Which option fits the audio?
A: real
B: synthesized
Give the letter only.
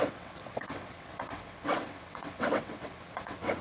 B